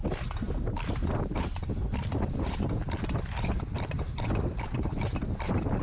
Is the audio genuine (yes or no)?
yes